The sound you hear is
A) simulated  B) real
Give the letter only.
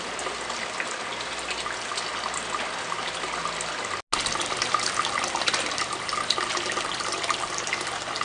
B